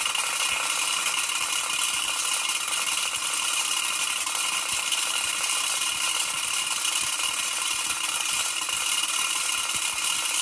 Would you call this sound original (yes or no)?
yes